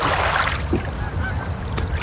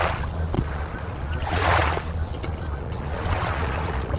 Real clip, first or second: first